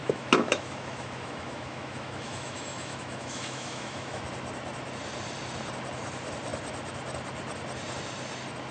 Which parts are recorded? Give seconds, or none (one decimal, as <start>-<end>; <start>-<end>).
4.2-8.7